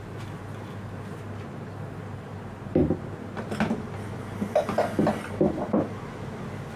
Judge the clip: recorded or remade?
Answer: recorded